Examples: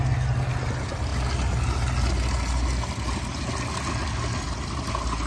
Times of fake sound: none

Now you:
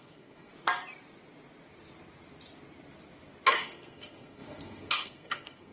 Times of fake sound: 0.0-0.5 (codec, SNAC); 3.5-5.7

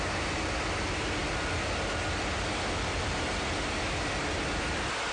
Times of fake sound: none